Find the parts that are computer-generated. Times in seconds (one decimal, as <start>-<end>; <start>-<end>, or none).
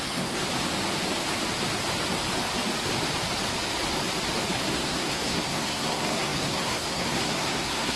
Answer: 0.0-0.4; 4.7-8.0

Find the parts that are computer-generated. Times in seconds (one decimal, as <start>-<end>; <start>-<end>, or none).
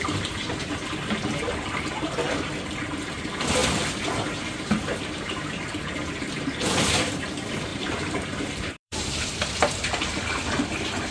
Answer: 7.7-9.5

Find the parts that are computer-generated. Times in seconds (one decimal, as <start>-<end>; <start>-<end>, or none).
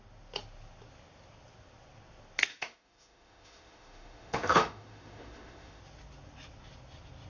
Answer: 2.5-5.8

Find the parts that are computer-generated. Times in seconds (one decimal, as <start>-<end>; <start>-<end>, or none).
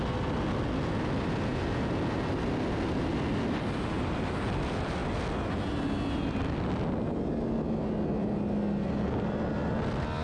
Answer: none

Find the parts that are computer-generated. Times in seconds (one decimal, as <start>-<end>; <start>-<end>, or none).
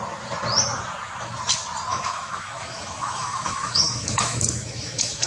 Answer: 1.9-5.3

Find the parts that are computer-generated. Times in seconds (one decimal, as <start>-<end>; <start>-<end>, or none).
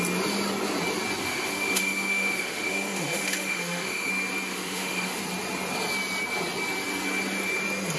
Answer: 1.2-4.1; 4.5-5.2